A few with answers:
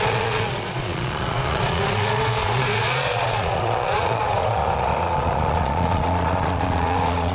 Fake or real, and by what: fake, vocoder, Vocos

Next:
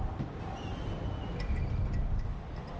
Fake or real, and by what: real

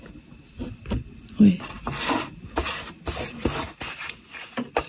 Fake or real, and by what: real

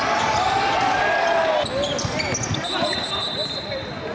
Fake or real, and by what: real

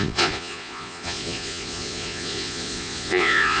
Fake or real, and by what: fake, vocoder, Vocos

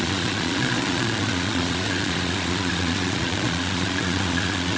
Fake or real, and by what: fake, vocoder, Vocos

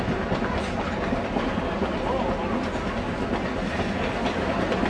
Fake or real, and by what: real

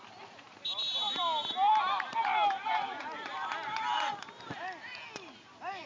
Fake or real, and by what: real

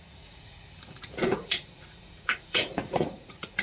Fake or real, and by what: fake, vocoder, Vocos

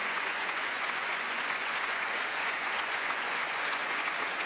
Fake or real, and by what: fake, vocoder, Vocos